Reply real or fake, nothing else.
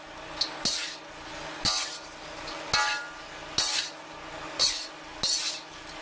real